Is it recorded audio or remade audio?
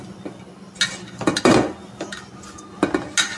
recorded